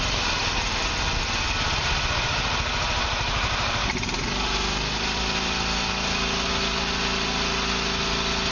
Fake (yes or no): no